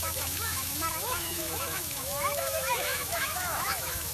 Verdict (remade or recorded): remade